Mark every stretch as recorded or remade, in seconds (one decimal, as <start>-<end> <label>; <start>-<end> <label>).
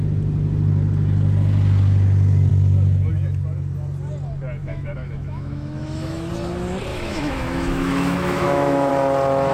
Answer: 0.0-4.6 recorded; 4.6-6.3 remade; 6.3-6.9 recorded; 6.9-8.9 remade; 8.9-9.5 recorded